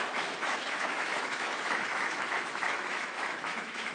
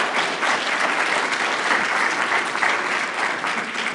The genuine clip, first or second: second